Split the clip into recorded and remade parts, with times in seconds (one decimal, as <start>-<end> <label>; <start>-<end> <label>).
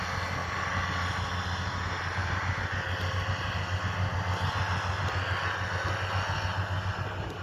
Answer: 0.0-7.4 recorded